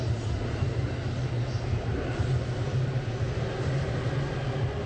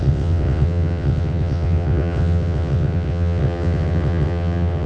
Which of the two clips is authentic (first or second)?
first